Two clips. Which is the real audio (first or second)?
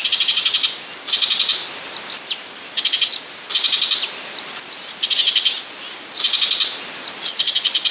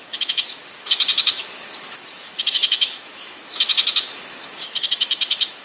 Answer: first